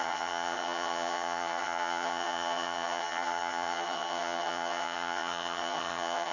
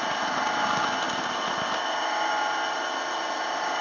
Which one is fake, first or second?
first